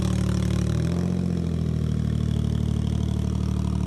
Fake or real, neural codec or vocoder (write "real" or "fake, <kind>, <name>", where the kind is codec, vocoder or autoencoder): real